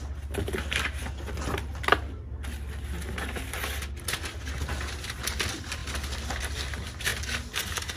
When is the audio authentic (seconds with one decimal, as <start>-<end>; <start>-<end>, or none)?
0.0-8.0